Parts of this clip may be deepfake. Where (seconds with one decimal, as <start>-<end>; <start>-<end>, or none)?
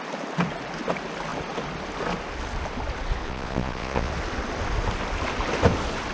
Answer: 3.2-4.1